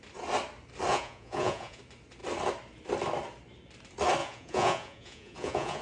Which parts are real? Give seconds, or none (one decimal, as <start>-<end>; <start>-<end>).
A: 0.0-0.9; 1.8-4.2